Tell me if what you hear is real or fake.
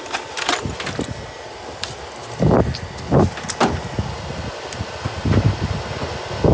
real